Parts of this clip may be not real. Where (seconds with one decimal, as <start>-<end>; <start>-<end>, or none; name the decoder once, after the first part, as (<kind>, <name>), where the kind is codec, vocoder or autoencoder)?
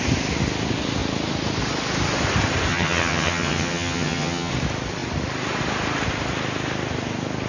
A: 2.7-4.5 (vocoder, HiFi-GAN)